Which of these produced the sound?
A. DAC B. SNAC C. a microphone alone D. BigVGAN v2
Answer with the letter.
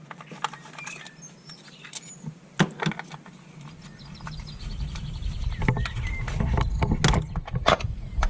C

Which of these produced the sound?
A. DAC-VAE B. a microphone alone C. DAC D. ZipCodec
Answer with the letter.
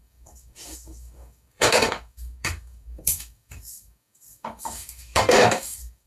C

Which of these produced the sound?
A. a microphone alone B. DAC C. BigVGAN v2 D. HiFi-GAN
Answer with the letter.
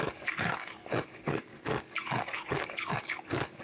B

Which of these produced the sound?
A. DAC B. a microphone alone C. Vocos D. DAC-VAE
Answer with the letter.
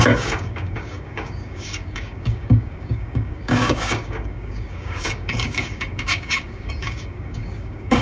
A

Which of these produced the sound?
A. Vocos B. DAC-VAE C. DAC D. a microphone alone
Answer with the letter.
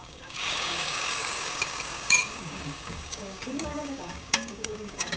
C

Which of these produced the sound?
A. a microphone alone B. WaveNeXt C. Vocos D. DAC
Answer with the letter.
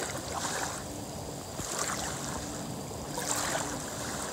A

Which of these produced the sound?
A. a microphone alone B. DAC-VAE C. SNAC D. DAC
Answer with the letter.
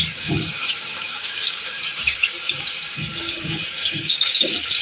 D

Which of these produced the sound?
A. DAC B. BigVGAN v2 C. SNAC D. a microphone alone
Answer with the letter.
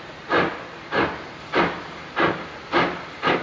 D